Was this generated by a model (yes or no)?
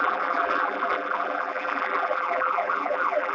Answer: yes